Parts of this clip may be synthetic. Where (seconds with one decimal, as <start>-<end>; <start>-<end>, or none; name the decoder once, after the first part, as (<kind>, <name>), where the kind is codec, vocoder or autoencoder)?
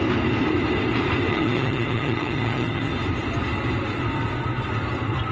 1.3-2.9 (vocoder, HiFi-GAN)